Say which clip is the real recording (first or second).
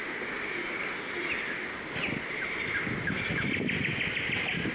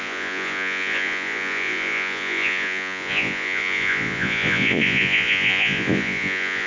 first